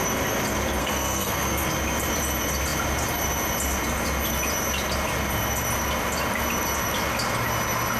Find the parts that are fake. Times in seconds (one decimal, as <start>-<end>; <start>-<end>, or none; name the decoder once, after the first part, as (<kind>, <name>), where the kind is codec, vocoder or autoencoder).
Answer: 0.8-1.7 (codec, SNAC)